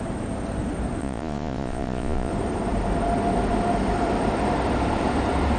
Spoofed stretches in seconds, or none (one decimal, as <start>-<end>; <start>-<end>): 1.0-2.3